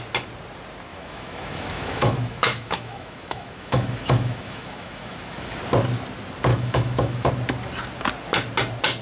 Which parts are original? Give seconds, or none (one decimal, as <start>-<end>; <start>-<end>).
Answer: 0.0-0.9; 5.6-6.5; 7.3-9.0

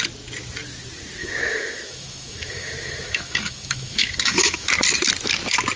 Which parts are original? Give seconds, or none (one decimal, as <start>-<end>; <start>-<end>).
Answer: 0.0-1.2; 4.7-5.8

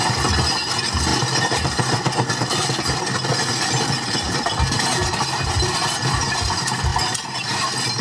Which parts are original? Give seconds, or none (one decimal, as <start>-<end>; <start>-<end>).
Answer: 0.0-8.0

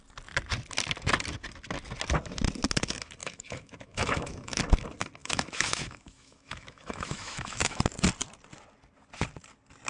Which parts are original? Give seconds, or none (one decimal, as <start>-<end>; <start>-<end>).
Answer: 0.0-3.2; 4.6-5.2; 7.8-9.9